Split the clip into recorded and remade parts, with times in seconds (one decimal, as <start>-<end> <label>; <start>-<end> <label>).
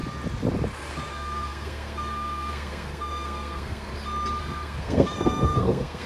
0.0-1.1 recorded; 1.1-3.9 remade; 3.9-4.4 recorded; 4.4-6.1 remade